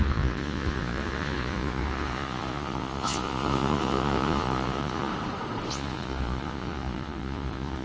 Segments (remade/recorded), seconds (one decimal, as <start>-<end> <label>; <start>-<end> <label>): 0.0-5.1 remade; 5.1-5.7 recorded; 5.7-7.8 remade